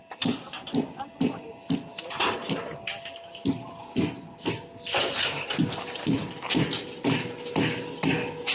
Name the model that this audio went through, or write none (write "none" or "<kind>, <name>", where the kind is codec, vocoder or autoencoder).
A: none